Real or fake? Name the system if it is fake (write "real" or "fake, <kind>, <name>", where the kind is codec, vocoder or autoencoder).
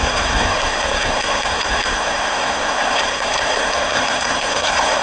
fake, codec, SNAC